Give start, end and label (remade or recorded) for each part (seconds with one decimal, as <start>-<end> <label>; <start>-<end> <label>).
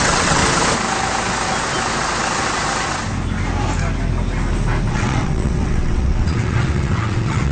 0.0-0.4 remade; 0.4-4.9 recorded; 4.9-7.5 remade